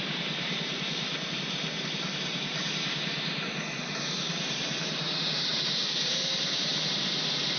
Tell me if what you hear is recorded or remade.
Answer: remade